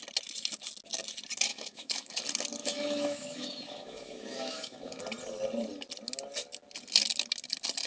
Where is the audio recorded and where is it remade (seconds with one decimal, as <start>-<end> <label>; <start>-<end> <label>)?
0.0-1.5 recorded; 1.5-2.2 remade; 2.2-2.6 recorded; 2.6-5.0 remade; 5.0-7.9 recorded